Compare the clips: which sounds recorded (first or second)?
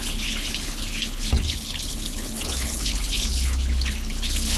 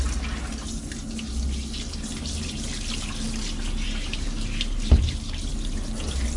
second